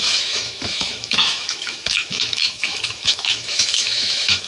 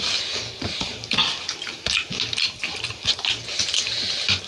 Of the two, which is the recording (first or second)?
second